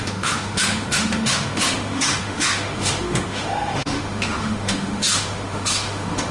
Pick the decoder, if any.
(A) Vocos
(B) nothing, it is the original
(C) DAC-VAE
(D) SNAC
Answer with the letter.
C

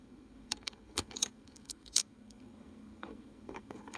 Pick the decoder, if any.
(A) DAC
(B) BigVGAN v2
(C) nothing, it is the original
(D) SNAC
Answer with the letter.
D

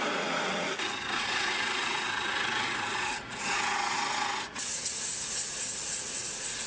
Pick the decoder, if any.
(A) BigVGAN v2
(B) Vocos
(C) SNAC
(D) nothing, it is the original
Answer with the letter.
B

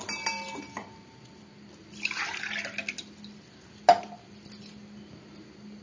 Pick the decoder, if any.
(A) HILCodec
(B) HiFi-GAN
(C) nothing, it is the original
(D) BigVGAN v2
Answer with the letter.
C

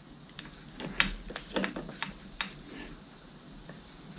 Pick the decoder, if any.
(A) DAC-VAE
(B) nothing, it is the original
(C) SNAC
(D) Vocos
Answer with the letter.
B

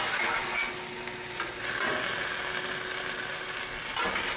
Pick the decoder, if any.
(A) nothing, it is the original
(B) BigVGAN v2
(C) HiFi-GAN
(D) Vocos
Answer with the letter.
A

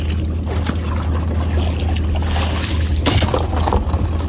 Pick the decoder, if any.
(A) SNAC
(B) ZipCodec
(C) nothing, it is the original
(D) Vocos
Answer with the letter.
C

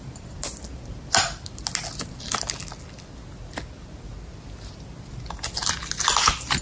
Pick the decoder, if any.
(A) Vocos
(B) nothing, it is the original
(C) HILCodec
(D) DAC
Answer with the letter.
B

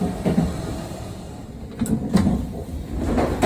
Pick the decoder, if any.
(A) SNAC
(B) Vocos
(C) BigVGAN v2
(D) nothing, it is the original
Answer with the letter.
D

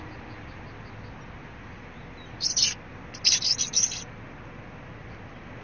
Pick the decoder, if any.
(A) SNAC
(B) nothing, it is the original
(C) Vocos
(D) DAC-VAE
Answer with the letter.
B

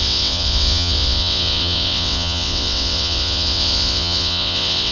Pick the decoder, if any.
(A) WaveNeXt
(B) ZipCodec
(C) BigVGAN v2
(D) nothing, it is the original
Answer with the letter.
A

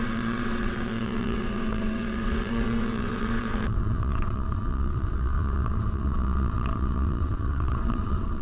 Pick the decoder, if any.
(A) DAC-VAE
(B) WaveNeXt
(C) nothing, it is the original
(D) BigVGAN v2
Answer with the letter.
B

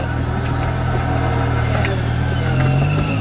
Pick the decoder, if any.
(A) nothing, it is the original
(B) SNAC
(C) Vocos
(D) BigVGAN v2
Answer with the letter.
A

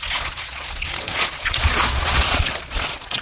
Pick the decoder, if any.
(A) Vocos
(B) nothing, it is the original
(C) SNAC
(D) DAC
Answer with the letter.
A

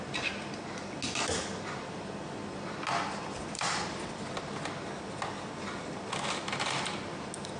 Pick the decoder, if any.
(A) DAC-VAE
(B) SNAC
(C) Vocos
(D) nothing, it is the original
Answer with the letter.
D